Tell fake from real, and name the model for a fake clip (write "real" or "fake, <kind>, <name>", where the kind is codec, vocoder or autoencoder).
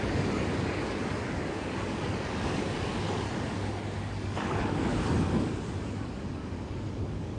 fake, codec, DAC